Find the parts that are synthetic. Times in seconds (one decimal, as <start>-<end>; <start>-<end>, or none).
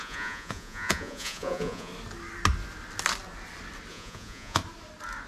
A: 0.0-1.9; 3.9-4.6